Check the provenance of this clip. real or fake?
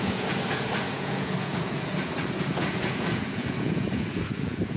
fake